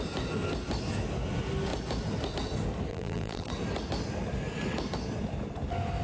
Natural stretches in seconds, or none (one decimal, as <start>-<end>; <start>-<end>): 0.0-2.9; 3.5-6.0